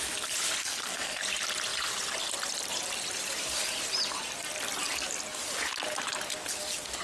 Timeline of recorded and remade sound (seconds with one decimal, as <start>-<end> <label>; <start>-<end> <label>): 0.0-0.6 recorded; 0.6-1.2 remade; 1.2-7.0 recorded